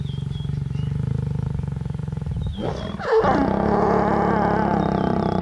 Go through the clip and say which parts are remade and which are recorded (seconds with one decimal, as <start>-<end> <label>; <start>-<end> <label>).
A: 0.0-5.4 recorded